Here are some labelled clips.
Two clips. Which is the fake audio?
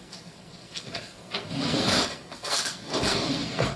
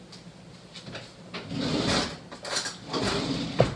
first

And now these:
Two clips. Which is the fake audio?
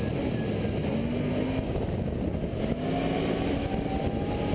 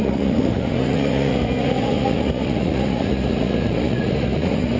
second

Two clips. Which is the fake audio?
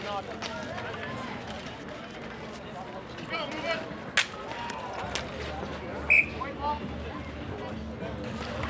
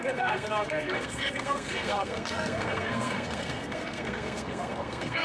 second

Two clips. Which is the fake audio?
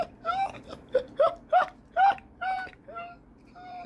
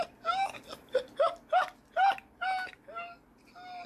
first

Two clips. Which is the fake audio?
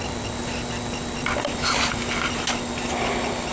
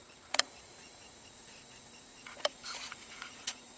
second